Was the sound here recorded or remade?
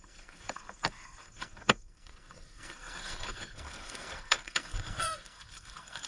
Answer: remade